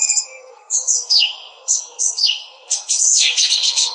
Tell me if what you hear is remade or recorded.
remade